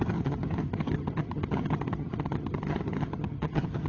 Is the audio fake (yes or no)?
yes